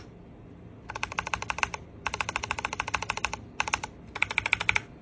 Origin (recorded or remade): recorded